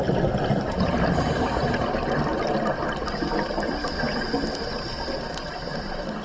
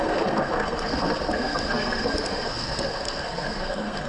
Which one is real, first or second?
first